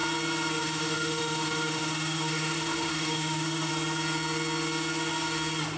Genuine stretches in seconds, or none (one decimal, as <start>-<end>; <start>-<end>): 0.0-0.6; 3.7-5.8